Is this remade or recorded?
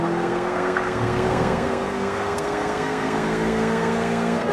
remade